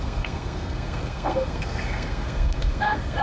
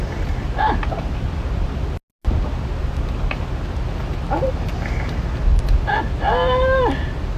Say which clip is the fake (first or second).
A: first